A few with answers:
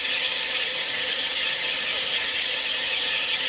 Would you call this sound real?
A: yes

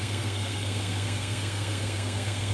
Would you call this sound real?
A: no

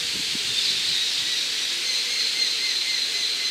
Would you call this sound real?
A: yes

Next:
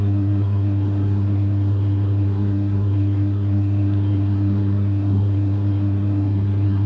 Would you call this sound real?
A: no